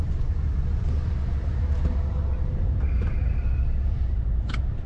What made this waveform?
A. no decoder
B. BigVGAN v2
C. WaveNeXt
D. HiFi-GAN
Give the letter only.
B